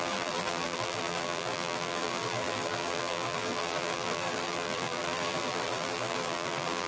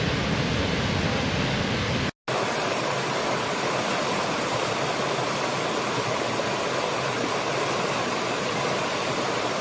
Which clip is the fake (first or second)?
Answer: first